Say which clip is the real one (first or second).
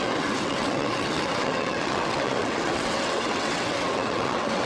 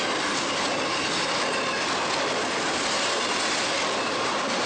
second